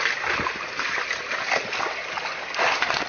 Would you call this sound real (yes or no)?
yes